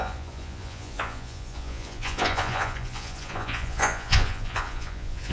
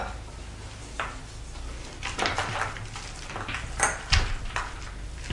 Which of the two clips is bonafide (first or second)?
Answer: second